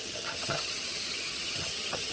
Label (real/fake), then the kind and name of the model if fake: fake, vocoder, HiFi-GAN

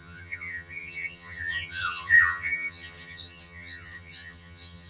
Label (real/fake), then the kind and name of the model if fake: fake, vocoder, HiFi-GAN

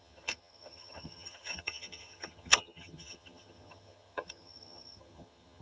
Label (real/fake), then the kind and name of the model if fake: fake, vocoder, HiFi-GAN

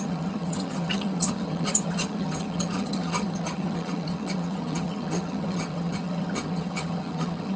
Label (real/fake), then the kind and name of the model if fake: fake, vocoder, HiFi-GAN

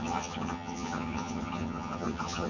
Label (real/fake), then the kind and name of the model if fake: fake, vocoder, HiFi-GAN